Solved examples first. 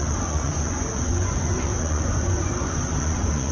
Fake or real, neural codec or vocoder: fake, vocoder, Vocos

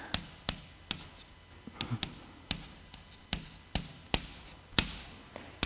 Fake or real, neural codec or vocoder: real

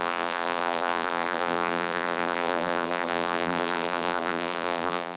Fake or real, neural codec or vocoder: fake, vocoder, BigVGAN v2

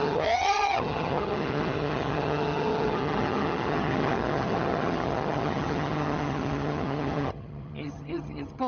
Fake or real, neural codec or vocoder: fake, vocoder, HiFi-GAN